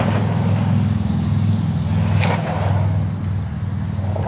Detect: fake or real real